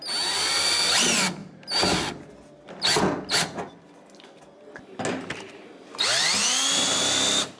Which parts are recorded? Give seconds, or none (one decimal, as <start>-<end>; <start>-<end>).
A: 0.0-7.6